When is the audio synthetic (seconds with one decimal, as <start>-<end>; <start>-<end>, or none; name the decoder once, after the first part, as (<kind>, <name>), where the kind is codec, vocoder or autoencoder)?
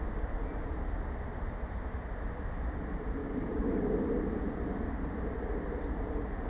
3.2-3.8 (codec, DAC)